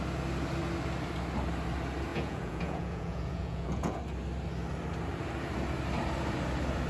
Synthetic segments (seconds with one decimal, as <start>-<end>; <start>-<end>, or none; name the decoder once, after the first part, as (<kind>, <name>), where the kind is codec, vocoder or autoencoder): 2.1-4.0 (vocoder, Vocos)